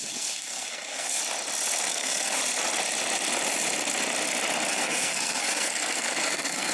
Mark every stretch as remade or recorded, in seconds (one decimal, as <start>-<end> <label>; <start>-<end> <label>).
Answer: 0.0-1.2 remade; 1.2-1.9 recorded; 1.9-2.4 remade; 2.4-4.7 recorded; 4.7-6.7 remade